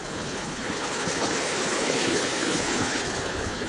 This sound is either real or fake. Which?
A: fake